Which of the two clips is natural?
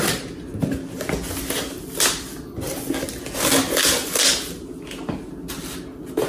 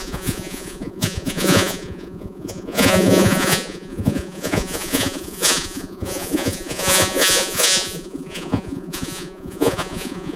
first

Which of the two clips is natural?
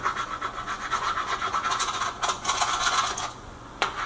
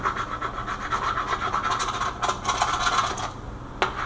second